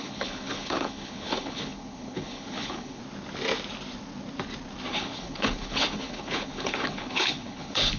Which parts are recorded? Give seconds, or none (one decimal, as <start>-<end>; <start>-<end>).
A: 3.0-4.9